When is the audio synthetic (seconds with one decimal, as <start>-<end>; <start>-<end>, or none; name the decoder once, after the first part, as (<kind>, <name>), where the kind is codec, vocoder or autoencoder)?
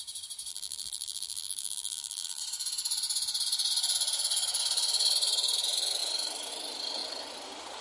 0.5-2.4 (vocoder, BigVGAN v2)